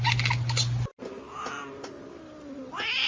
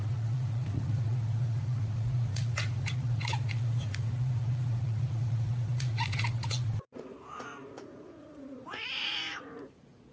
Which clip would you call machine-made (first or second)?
second